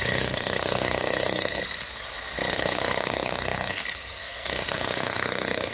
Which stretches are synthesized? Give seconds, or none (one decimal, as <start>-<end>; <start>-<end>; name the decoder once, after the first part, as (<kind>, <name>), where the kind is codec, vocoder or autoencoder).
0.0-1.6 (codec, SNAC); 2.5-5.7